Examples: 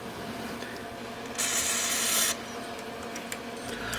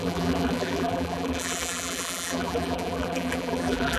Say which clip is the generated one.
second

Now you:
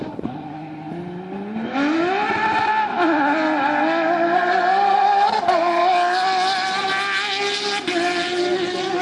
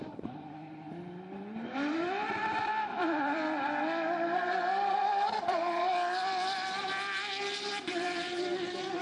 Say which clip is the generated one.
second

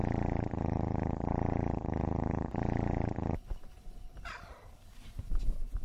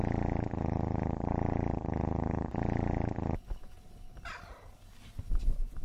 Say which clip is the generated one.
first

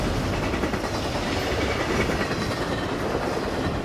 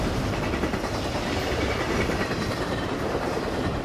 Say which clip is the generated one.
second